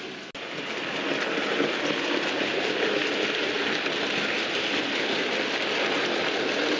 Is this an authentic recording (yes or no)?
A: yes